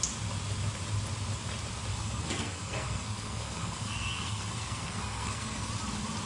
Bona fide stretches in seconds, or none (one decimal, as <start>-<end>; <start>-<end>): 0.0-1.9; 5.7-6.3